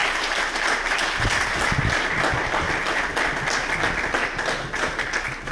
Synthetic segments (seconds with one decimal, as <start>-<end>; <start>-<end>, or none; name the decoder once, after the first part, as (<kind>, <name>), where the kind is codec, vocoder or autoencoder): none